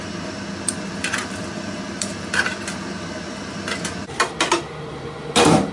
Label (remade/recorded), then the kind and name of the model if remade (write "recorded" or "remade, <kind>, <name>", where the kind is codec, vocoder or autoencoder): recorded